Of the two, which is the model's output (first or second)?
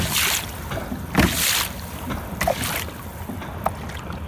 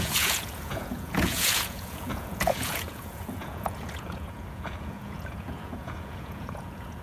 second